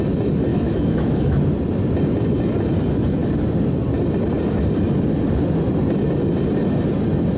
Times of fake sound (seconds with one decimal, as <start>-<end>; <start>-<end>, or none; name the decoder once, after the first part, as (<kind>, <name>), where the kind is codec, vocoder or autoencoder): 0.5-1.4 (autoencoder, DAC-VAE)